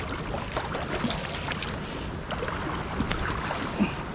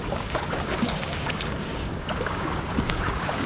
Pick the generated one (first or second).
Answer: second